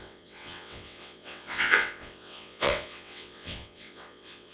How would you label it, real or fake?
fake